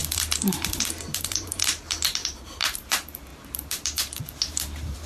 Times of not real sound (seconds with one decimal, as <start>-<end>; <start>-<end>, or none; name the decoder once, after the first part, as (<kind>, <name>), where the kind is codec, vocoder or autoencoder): 0.0-5.1 (vocoder, BigVGAN v2)